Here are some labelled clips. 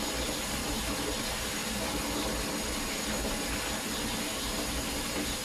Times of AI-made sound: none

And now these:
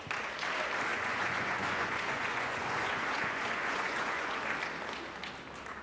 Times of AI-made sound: 0.9-4.4 (vocoder, Vocos)

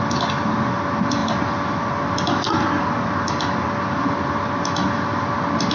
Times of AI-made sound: none

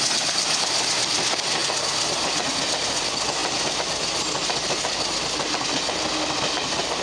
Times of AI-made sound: none

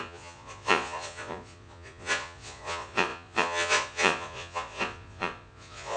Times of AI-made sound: 0.0-6.0 (vocoder, Vocos)